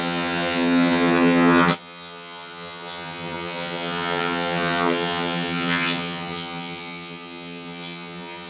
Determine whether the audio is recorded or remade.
remade